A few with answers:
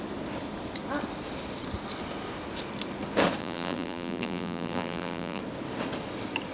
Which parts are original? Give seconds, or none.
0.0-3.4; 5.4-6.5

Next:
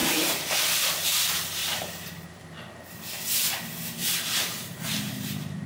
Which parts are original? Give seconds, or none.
0.6-1.6; 2.4-4.0; 4.9-5.7